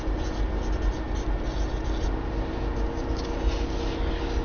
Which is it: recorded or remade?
recorded